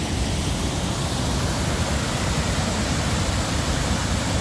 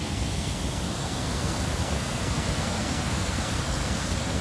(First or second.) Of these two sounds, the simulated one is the second